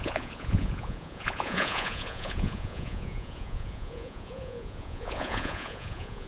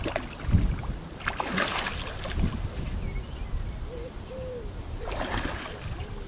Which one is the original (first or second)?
second